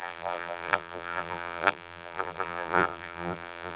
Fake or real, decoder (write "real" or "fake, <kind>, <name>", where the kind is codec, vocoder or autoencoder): fake, vocoder, BigVGAN v2